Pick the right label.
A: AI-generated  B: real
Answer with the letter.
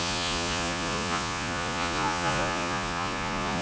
A